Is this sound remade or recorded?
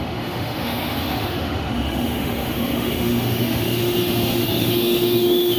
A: remade